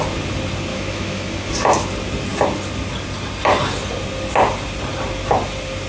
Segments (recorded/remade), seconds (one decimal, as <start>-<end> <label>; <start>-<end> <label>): 0.0-0.7 recorded; 0.7-1.5 remade; 1.5-5.9 recorded